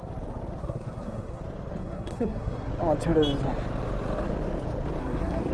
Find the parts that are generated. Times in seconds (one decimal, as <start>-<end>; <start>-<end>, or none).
0.6-1.4; 1.8-2.7; 5.0-5.5